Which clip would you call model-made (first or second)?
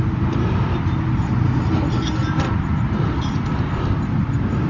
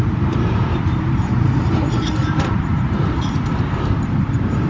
second